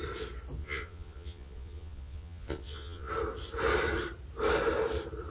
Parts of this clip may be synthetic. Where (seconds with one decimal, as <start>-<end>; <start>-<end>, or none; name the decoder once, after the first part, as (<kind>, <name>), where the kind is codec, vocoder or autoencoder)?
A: 0.6-3.1 (vocoder, Vocos)